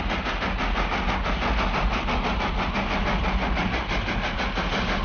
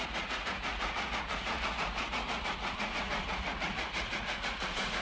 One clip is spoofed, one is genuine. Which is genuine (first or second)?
first